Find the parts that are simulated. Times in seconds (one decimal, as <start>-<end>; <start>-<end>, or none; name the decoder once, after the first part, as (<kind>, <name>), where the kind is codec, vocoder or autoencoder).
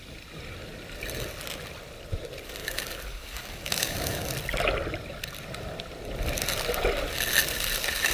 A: 2.6-4.3 (codec, DAC)